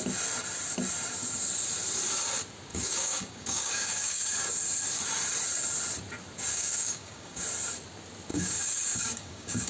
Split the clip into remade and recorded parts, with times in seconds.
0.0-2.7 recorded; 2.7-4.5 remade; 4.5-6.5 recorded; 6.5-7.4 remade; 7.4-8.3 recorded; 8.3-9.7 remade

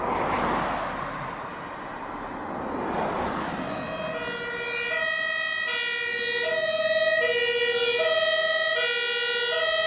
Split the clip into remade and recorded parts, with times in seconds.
0.0-1.5 recorded; 1.5-2.0 remade; 2.0-9.9 recorded

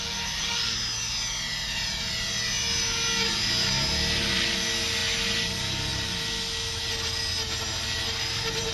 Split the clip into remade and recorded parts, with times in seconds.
0.0-8.7 recorded

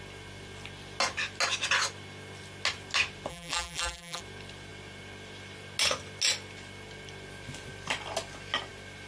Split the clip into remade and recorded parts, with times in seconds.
0.0-3.3 recorded; 3.3-4.2 remade; 4.2-9.1 recorded

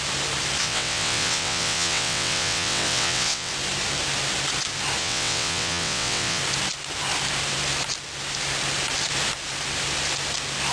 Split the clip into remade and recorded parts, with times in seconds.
0.0-0.6 recorded; 0.6-3.5 remade; 3.5-5.0 recorded; 5.0-6.4 remade; 6.4-10.7 recorded

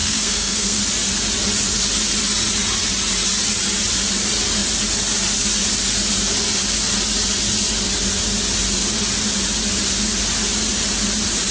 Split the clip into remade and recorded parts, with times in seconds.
0.0-0.8 remade; 0.8-11.5 recorded

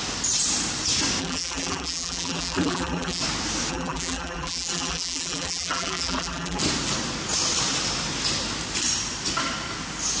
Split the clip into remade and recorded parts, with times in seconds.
0.0-1.2 recorded; 1.2-3.2 remade; 3.2-3.7 recorded; 3.7-6.6 remade; 6.6-10.2 recorded